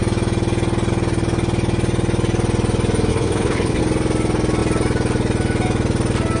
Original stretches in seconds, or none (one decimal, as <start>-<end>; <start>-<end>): 0.0-3.1; 3.8-6.4